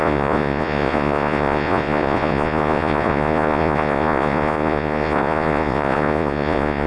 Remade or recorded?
remade